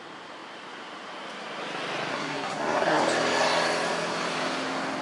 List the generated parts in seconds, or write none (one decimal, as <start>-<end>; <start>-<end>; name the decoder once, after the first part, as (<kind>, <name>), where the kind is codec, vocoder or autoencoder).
2.1-3.0 (codec, SNAC)